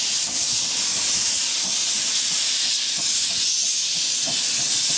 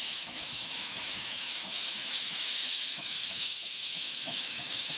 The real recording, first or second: first